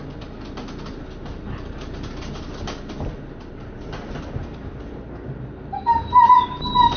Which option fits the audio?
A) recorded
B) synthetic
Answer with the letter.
A